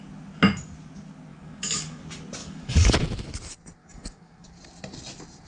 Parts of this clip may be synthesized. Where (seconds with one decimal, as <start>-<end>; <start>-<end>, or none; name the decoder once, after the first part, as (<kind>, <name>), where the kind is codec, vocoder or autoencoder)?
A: 1.3-2.0 (codec, DAC); 2.4-3.0; 3.8-4.5